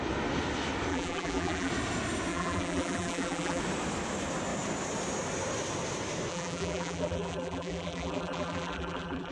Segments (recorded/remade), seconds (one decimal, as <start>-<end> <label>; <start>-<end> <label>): 0.0-0.9 recorded; 0.9-1.7 remade; 1.7-2.3 recorded; 2.3-3.6 remade; 3.6-6.3 recorded; 6.3-9.3 remade